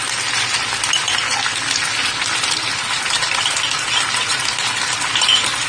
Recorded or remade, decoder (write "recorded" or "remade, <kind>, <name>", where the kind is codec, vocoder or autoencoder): recorded